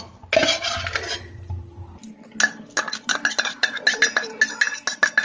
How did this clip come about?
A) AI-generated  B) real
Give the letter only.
B